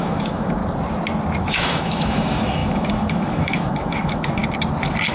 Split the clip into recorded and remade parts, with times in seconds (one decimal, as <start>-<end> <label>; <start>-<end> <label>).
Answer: 0.0-0.6 remade; 0.6-1.4 recorded; 1.4-4.4 remade; 4.4-5.1 recorded